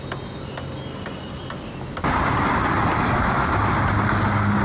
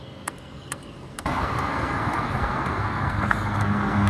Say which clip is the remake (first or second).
second